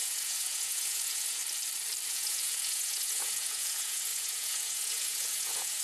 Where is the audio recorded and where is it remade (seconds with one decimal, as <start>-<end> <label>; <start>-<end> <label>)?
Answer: 0.0-1.4 remade; 1.4-2.1 recorded; 2.1-5.8 remade